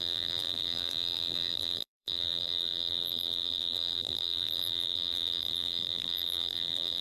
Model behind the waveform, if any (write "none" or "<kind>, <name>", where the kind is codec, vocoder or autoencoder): vocoder, BigVGAN v2